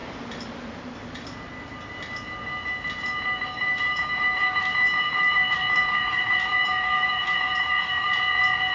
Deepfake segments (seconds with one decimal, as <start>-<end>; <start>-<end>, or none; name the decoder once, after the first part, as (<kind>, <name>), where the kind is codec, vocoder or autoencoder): 3.5-8.1 (autoencoder, DAC-VAE)